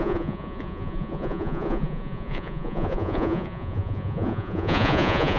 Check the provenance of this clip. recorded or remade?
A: remade